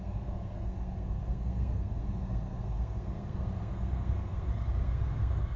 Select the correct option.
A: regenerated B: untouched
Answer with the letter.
A